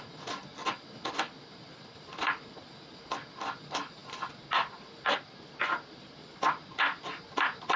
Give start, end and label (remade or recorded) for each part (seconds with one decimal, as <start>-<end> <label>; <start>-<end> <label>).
0.0-0.5 recorded; 0.5-2.3 remade; 2.3-4.0 recorded; 4.0-7.0 remade; 7.0-7.8 recorded